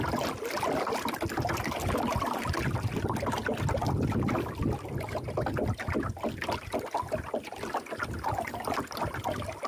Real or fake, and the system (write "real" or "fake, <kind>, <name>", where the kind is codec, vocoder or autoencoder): real